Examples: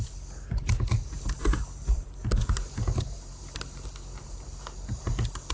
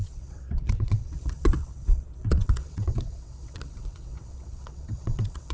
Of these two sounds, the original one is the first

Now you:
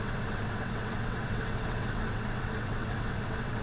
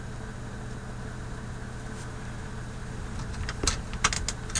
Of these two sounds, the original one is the second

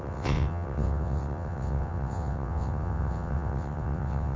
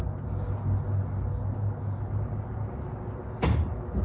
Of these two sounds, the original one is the second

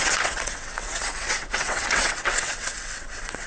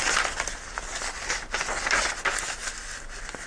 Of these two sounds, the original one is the second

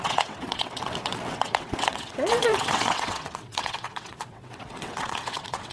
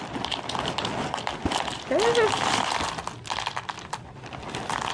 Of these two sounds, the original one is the second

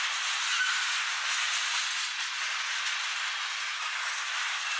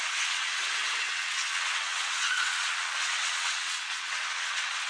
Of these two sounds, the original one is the first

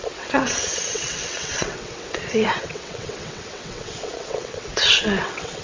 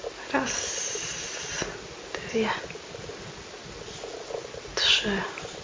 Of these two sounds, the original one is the second